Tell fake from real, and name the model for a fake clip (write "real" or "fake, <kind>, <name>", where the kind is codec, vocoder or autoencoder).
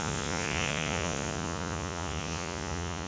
fake, vocoder, Vocos